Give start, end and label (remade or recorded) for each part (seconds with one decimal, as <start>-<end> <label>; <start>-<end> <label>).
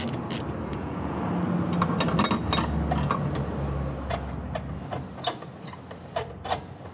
0.0-0.7 recorded; 0.7-1.2 remade; 1.2-6.9 recorded